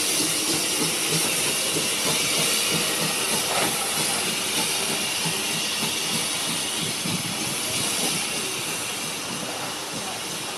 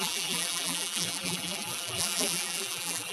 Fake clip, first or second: second